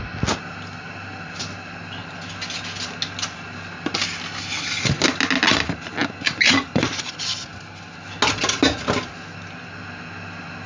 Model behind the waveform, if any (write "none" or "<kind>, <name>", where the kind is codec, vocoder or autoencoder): none